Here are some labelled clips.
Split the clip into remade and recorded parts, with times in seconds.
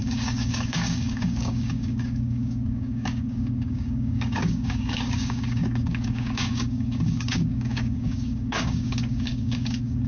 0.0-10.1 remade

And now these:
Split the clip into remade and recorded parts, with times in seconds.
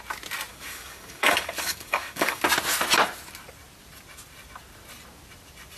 0.0-0.5 recorded; 0.5-2.4 remade; 2.4-5.8 recorded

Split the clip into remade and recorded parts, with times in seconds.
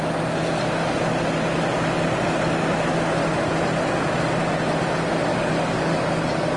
0.0-5.3 recorded; 5.3-6.0 remade; 6.0-6.6 recorded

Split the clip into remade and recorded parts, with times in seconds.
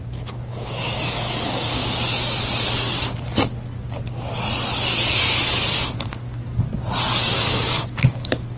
0.0-1.8 remade; 1.8-6.0 recorded; 6.0-6.7 remade; 6.7-7.3 recorded; 7.3-8.6 remade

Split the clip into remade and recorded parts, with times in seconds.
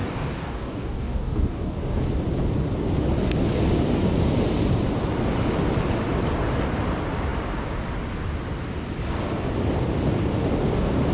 0.0-2.0 remade; 2.0-11.1 recorded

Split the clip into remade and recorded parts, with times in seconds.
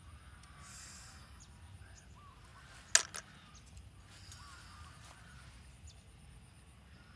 0.0-0.7 recorded; 0.7-1.4 remade; 1.4-7.2 recorded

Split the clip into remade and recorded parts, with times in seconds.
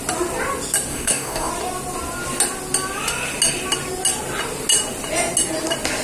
0.0-0.9 recorded; 0.9-1.5 remade; 1.5-6.0 recorded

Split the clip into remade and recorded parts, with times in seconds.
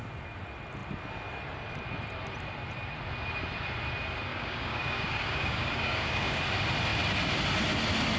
0.0-4.3 recorded; 4.3-6.4 remade; 6.4-8.2 recorded